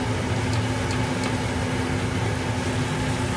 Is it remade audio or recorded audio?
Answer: recorded